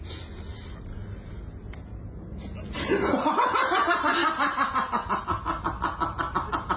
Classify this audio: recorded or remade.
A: recorded